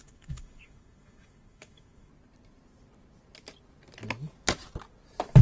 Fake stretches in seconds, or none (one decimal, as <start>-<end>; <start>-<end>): 0.0-2.1